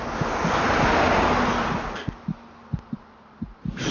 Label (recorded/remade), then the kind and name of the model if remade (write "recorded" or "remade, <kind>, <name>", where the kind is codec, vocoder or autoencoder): recorded